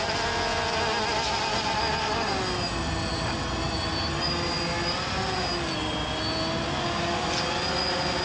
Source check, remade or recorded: recorded